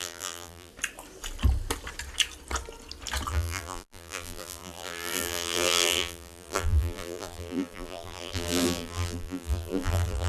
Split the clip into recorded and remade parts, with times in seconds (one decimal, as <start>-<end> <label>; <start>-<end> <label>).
0.0-0.7 remade; 0.7-3.3 recorded; 3.3-10.3 remade